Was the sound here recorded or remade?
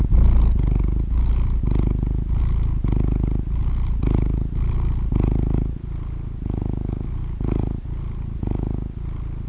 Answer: recorded